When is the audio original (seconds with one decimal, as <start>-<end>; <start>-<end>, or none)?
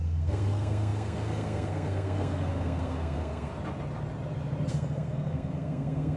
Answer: 3.5-4.7